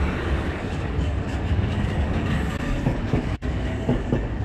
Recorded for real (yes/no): no